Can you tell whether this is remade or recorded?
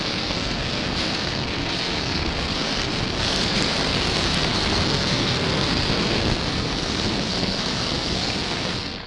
remade